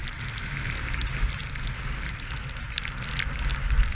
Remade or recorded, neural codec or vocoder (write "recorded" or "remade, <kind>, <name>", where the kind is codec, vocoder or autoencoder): recorded